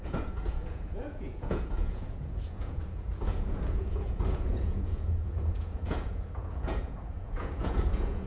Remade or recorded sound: remade